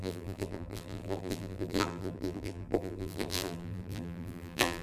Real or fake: fake